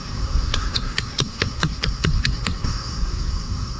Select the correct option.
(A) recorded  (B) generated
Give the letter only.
B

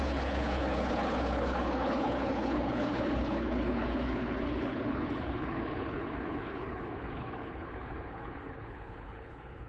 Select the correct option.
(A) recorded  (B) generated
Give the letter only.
B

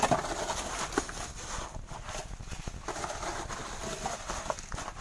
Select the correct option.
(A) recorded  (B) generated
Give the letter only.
A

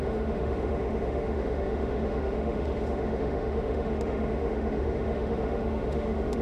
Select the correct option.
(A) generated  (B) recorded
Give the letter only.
A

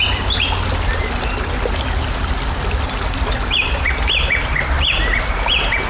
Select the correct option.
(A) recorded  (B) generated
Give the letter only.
A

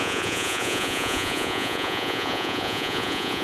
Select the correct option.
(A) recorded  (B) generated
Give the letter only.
B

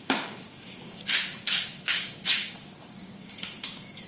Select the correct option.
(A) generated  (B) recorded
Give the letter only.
A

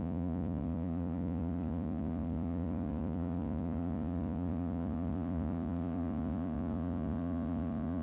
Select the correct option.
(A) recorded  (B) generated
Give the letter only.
B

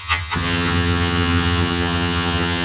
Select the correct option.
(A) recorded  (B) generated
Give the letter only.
B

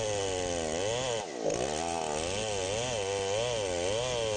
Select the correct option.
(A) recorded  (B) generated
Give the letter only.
A